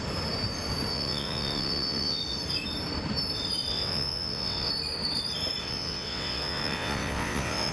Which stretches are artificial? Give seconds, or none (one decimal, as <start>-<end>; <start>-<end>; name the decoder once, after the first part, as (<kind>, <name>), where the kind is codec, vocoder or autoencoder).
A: 0.9-2.2 (vocoder, WaveNeXt); 3.7-4.7; 5.6-7.7